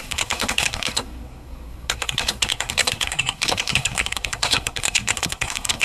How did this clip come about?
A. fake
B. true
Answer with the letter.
A